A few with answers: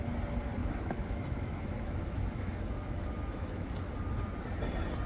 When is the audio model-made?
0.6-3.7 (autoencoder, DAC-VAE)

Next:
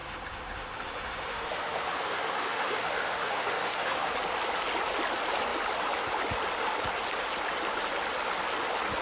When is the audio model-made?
0.0-4.1 (autoencoder, DAC-VAE)

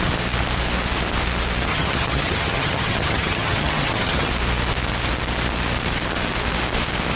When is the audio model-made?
1.7-4.3 (vocoder, HiFi-GAN)

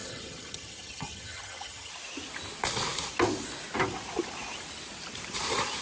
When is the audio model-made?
0.0-1.9 (vocoder, HiFi-GAN)